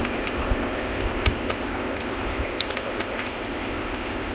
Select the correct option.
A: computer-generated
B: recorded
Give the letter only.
A